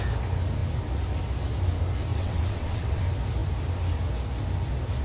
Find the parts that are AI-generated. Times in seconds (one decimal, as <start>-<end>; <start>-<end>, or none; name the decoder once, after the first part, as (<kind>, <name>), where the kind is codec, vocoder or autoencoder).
2.1-3.0 (vocoder, WaveNeXt)